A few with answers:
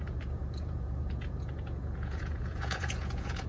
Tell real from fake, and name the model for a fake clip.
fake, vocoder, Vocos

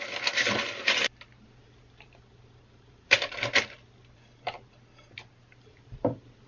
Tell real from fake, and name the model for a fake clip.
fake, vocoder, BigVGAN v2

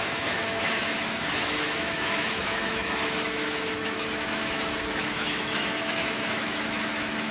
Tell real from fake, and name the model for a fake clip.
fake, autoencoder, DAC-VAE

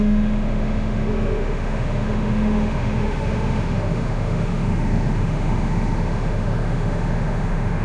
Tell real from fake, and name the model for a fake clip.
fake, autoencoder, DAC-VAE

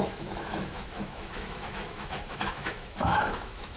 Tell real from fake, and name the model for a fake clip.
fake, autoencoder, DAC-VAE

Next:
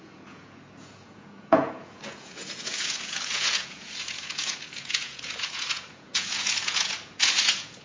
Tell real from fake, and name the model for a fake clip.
fake, vocoder, Vocos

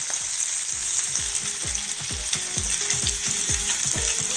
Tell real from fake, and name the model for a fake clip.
real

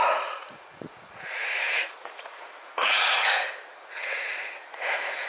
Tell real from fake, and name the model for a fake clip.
fake, vocoder, Vocos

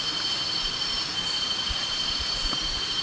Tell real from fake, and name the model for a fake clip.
real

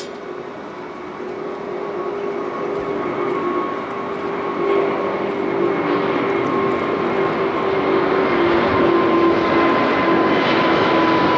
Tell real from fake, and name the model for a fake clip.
real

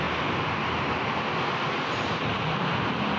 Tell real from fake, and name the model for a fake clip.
real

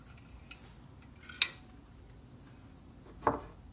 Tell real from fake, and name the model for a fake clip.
real